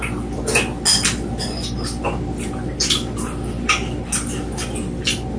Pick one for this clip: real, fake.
real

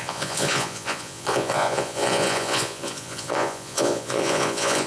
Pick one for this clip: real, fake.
fake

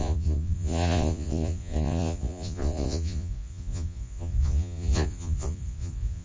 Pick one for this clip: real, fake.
fake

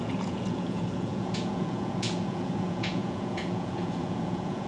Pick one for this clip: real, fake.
fake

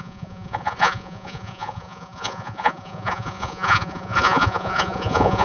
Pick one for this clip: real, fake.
fake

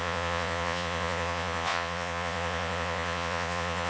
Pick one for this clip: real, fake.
fake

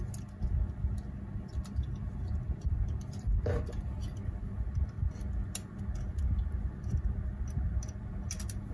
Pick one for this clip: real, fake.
real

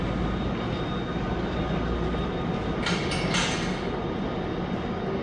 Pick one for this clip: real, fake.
real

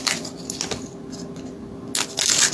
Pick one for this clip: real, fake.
real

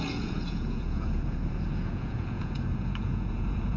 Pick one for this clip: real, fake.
fake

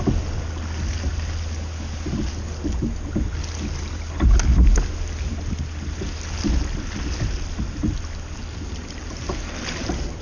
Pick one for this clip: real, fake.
real